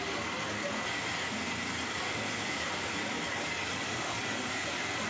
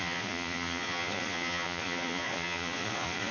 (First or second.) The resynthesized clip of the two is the second